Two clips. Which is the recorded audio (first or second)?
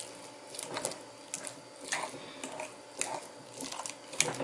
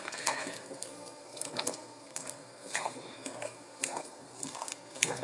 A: first